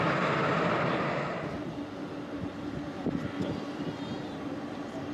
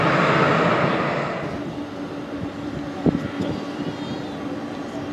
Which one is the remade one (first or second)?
first